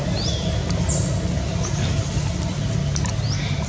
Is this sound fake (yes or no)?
no